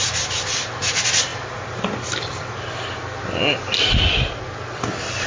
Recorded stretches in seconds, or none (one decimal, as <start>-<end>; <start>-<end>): 0.0-5.3